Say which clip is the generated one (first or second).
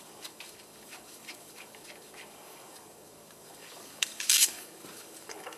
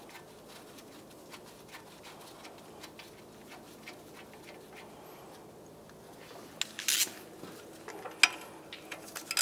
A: first